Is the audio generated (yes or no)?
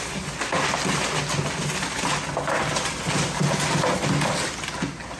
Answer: no